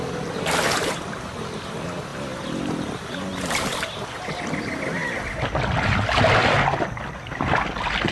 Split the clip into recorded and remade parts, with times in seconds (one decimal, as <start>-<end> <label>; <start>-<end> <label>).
0.0-8.1 recorded